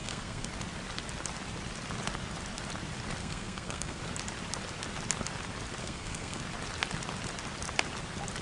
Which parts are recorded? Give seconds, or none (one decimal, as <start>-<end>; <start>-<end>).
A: 0.5-3.2; 4.0-5.8; 6.4-8.4